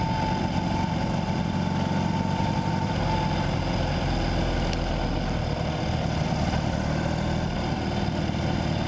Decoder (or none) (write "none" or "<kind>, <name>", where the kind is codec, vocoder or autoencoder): none